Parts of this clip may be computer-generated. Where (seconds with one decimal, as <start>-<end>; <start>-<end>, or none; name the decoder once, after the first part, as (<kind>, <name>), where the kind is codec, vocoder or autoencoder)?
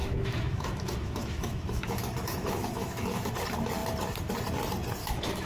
0.0-3.3 (autoencoder, DAC-VAE); 5.0-5.5